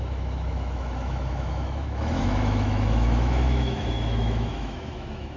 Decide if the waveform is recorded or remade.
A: remade